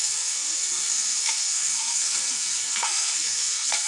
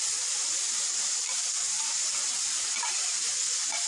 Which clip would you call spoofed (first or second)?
first